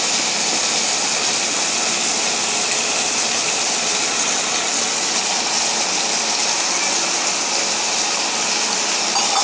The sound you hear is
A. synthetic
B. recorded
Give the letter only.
B